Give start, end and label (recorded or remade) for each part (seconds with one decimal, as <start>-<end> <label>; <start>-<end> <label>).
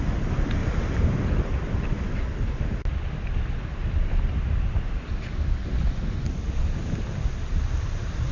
0.0-0.6 recorded; 0.6-1.5 remade; 1.5-8.3 recorded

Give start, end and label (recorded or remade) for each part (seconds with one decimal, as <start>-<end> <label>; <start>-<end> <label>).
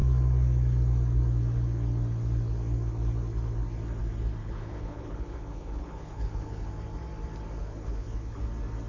0.0-4.4 recorded; 4.4-6.7 remade; 6.7-7.6 recorded; 7.6-8.4 remade; 8.4-8.9 recorded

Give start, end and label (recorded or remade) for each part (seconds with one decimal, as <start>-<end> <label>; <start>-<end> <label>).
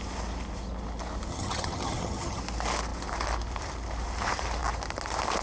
0.0-1.3 recorded; 1.3-2.4 remade; 2.4-5.4 recorded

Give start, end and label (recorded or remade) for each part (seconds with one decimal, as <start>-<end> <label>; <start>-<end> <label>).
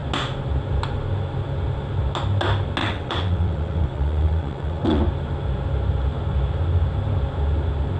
0.0-2.8 recorded; 2.8-5.0 remade; 5.0-8.0 recorded